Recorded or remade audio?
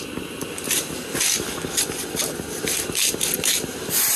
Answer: recorded